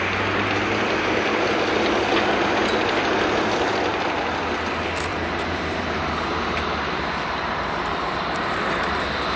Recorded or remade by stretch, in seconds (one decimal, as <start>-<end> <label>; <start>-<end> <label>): 0.0-2.1 recorded; 2.1-2.7 remade; 2.7-5.1 recorded; 5.1-9.0 remade; 9.0-9.4 recorded